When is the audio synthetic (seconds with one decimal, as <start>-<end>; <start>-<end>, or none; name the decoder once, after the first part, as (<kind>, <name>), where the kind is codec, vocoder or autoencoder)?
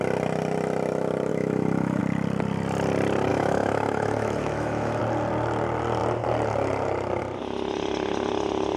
1.3-2.0 (autoencoder, DAC-VAE); 3.3-5.0